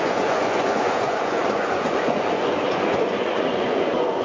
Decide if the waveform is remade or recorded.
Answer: remade